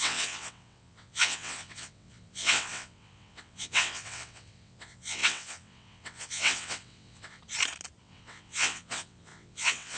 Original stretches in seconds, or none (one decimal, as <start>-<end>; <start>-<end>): 7.4-8.0